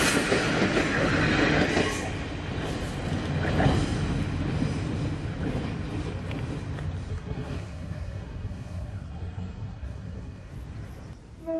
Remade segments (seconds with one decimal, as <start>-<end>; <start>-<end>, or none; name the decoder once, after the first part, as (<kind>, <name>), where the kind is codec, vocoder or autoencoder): 7.1-10.5 (codec, SNAC)